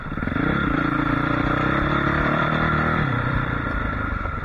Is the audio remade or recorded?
remade